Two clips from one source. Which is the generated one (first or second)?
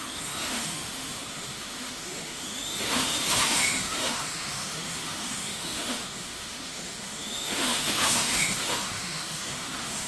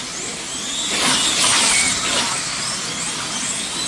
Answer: first